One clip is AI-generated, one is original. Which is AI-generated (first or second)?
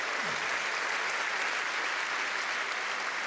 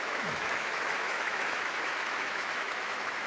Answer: second